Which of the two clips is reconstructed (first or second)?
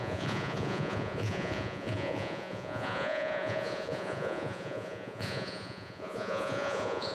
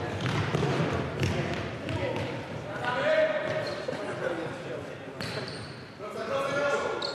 first